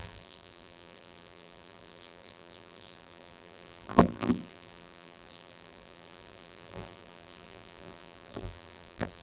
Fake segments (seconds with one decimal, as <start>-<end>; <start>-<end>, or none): 0.0-9.2